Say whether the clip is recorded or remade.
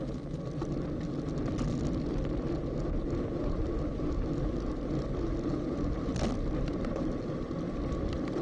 recorded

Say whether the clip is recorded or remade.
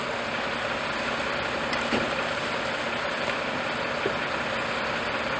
recorded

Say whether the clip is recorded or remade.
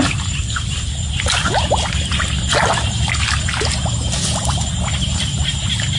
recorded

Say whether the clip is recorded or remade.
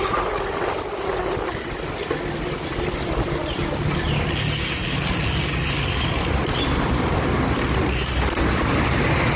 recorded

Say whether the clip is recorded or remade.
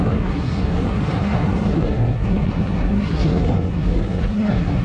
remade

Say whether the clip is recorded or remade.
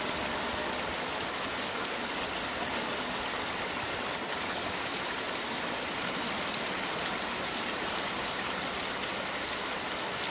recorded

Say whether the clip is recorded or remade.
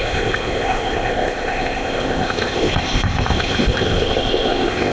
remade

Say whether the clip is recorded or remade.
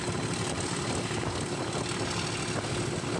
recorded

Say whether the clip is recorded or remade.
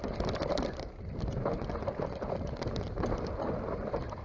remade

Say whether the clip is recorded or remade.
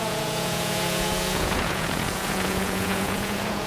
remade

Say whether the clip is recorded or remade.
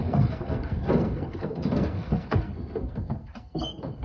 remade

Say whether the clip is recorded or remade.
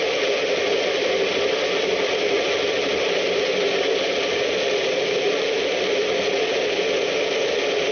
recorded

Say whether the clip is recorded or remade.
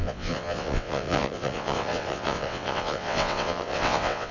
remade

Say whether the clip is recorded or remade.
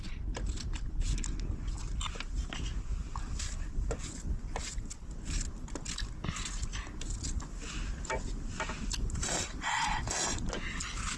recorded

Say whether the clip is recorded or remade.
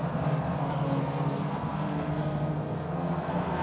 remade